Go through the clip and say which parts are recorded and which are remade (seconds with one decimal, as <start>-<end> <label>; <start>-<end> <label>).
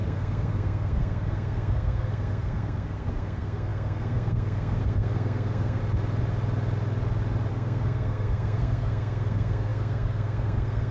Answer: 0.0-5.8 remade; 5.8-7.5 recorded; 7.5-10.9 remade